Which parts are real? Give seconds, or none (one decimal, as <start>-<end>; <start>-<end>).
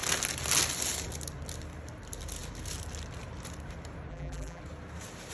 0.0-4.1; 4.6-5.3